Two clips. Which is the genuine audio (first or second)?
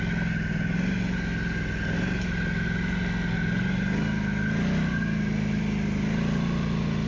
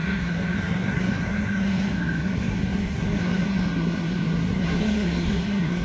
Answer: first